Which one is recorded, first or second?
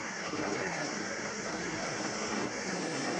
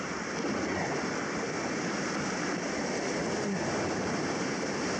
second